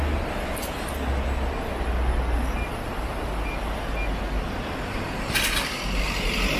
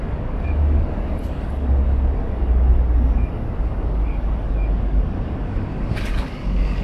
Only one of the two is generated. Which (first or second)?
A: second